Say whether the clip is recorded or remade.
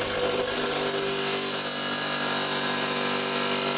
recorded